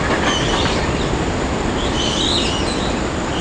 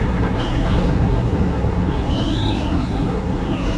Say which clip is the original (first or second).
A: first